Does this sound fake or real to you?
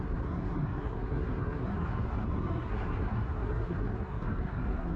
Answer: fake